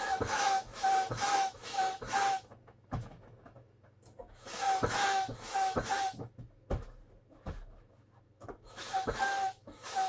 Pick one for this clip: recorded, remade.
remade